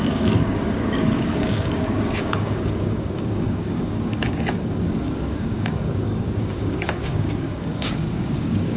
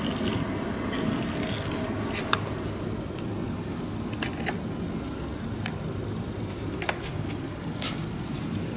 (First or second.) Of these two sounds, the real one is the second